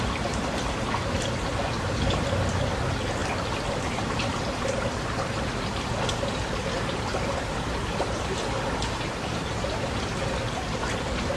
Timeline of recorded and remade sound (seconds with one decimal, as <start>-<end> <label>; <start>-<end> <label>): 0.0-11.4 recorded